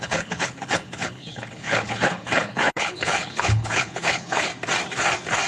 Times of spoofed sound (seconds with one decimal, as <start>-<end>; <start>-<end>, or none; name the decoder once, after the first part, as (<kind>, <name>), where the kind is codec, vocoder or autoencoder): 0.0-4.5 (codec, HILCodec)